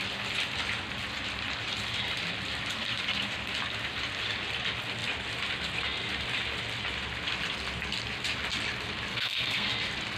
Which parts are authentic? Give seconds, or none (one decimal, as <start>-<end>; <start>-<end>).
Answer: 0.0-9.1; 9.7-10.2